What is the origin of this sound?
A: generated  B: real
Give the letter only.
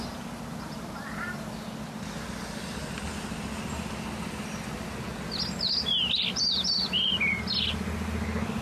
B